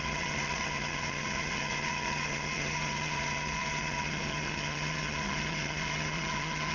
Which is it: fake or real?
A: fake